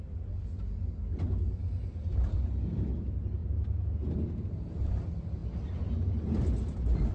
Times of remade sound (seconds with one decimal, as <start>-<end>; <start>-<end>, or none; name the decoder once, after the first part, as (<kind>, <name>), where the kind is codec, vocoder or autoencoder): none